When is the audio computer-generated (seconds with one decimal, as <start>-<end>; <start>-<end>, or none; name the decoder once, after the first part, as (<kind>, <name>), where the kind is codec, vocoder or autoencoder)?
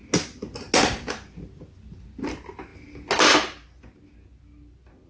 none